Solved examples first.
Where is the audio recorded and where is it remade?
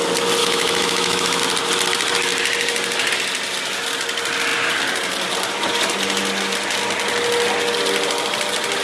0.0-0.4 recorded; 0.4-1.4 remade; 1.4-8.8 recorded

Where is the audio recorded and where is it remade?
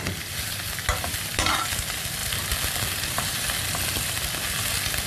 0.0-5.1 recorded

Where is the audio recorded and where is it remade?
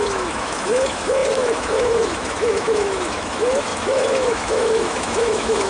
0.0-5.7 remade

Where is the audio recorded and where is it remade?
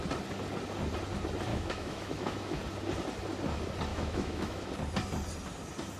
0.0-1.5 recorded; 1.5-2.6 remade; 2.6-3.9 recorded; 3.9-4.7 remade; 4.7-6.0 recorded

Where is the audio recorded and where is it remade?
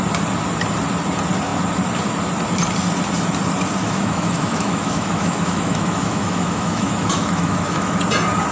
0.0-3.8 recorded; 3.8-8.0 remade; 8.0-8.5 recorded